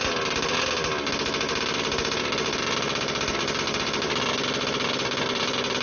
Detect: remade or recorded recorded